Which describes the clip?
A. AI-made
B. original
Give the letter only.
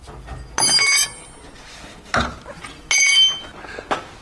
B